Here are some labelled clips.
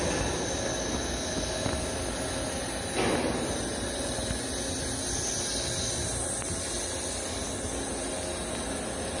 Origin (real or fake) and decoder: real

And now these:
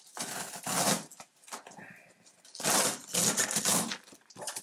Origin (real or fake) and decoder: real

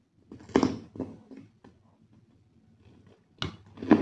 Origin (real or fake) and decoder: real